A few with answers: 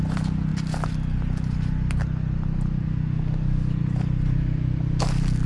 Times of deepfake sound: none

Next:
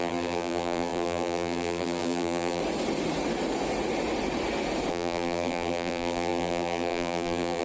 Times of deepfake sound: 0.0-2.6 (vocoder, BigVGAN v2); 4.9-7.6

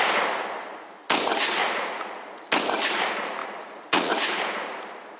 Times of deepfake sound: 1.6-2.5 (vocoder, Vocos); 3.4-4.1

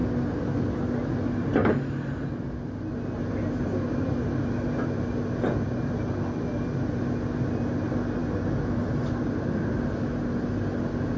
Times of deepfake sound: none

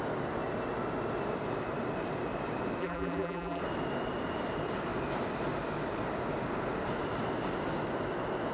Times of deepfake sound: 2.8-3.6 (vocoder, BigVGAN v2)

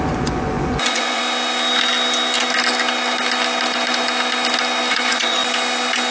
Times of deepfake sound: 0.0-1.2 (vocoder, Vocos); 4.9-5.4